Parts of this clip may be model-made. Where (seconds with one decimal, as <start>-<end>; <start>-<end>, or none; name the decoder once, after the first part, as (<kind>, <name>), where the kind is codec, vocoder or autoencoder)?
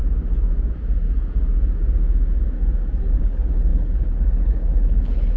3.2-5.4 (codec, HILCodec)